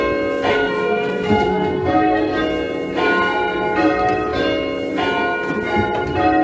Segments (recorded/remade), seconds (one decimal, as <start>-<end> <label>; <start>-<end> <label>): 0.0-0.5 recorded; 0.5-2.4 remade; 2.4-6.4 recorded